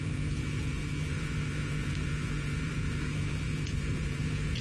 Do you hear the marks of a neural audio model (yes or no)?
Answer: yes